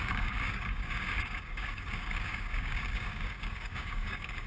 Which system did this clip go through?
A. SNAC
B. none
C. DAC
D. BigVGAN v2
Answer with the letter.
C